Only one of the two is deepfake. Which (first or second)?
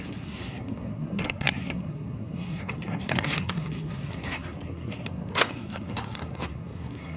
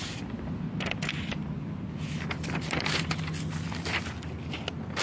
first